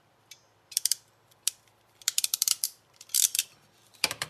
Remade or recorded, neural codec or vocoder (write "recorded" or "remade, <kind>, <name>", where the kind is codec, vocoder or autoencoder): remade, vocoder, BigVGAN v2